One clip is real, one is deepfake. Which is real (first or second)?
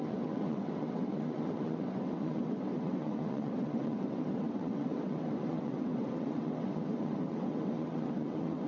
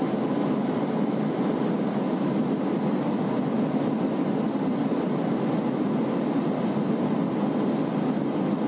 second